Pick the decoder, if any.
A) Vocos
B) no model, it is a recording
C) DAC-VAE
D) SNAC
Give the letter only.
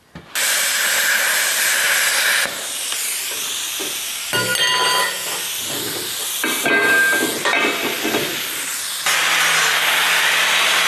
B